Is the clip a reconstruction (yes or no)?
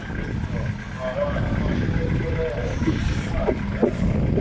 no